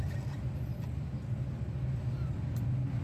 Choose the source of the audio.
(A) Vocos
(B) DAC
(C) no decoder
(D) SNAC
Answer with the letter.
C